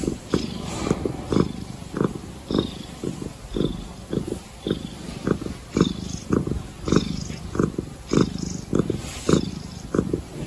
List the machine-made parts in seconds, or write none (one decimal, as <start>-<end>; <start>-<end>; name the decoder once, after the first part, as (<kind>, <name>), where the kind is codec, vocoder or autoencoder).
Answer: 0.0-6.7 (vocoder, BigVGAN v2); 7.4-10.5